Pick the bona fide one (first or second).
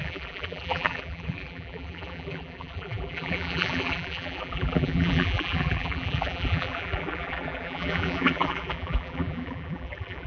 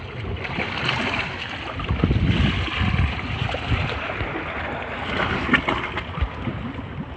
second